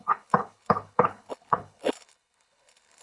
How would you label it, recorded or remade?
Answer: remade